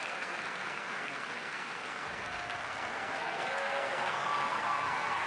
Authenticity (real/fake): fake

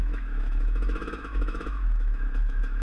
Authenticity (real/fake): fake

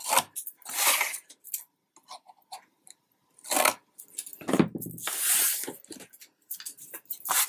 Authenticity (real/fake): real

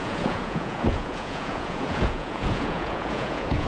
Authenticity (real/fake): fake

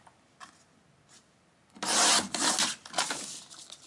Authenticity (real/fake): real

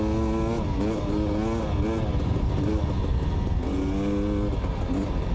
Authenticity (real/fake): real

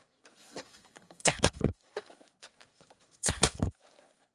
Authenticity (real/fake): fake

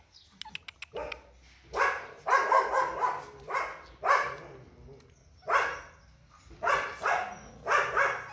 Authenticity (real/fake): real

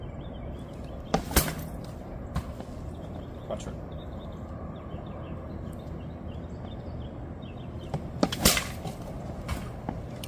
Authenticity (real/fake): real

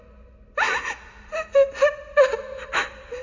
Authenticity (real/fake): real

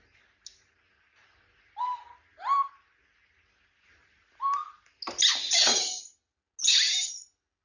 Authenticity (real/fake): real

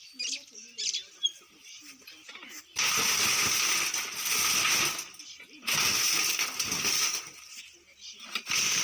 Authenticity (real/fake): real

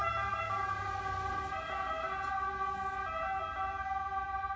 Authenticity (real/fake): real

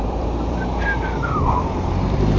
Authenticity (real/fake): fake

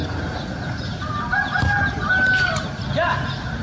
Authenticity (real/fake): real